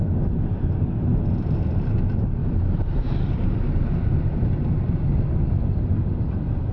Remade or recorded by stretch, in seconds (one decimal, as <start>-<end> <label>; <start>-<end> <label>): 0.0-2.4 recorded; 2.4-5.3 remade; 5.3-6.7 recorded